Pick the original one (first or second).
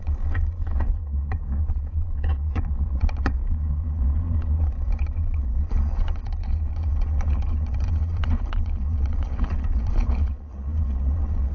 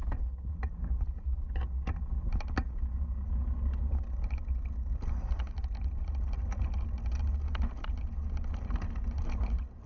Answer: second